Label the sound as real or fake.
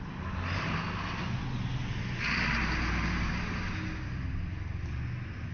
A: real